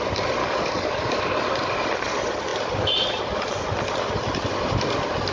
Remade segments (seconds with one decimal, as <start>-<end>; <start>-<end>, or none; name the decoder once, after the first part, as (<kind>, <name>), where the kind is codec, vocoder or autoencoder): 0.4-1.2 (codec, DAC)